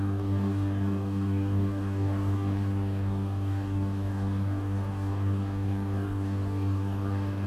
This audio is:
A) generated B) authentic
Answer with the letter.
A